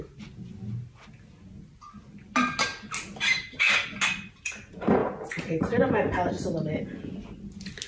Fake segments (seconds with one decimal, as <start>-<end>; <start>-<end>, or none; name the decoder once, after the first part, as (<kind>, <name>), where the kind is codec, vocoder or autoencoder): none